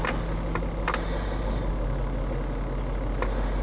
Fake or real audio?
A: real